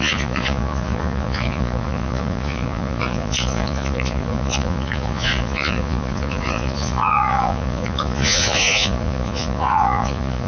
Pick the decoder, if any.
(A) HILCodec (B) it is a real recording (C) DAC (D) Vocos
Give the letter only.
D